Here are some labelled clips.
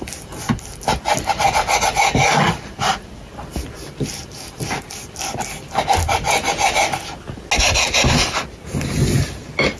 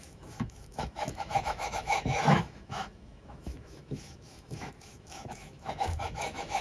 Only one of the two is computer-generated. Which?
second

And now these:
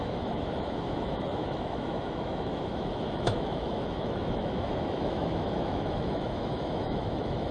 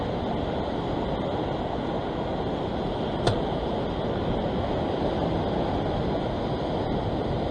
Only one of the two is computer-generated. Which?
first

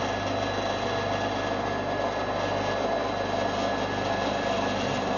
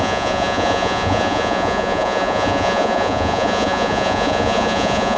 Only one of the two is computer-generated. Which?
second